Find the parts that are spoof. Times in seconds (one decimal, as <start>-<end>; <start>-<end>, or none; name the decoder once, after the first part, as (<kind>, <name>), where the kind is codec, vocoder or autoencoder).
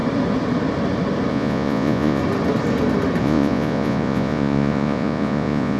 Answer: 1.3-2.2 (vocoder, Vocos); 3.2-5.8